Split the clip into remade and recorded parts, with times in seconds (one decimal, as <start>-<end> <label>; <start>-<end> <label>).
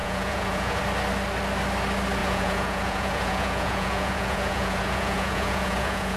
0.0-0.8 remade; 0.8-2.2 recorded; 2.2-6.2 remade